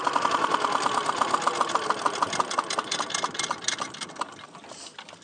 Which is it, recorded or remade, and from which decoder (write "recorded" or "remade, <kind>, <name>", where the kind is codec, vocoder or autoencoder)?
recorded